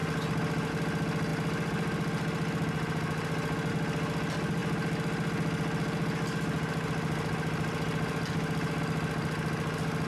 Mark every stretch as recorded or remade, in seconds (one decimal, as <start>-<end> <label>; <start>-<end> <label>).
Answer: 0.0-10.1 recorded